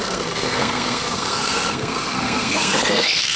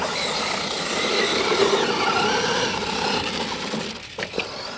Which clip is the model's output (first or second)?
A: first